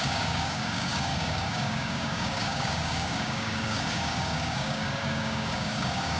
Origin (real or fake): fake